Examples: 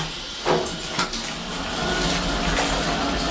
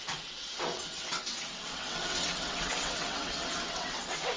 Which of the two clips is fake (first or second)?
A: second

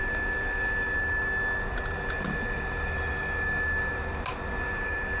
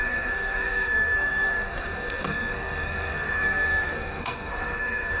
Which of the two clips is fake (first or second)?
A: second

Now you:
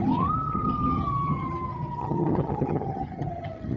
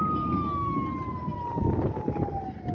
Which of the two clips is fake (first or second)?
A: first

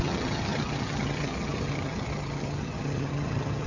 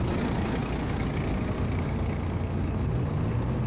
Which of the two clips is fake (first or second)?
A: first